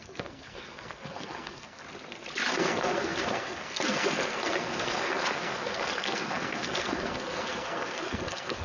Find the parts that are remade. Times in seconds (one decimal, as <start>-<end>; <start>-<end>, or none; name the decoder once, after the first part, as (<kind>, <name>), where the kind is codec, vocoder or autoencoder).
0.0-1.8 (codec, SNAC); 2.5-8.6